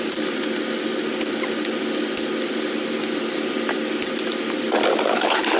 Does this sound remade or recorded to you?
recorded